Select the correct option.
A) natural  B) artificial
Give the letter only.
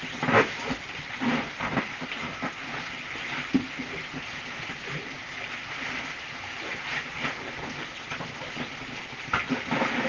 A